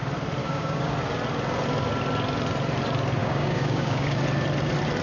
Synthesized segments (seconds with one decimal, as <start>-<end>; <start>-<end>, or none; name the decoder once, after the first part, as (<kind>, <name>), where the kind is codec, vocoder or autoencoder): 0.4-0.9 (codec, DAC); 3.2-4.2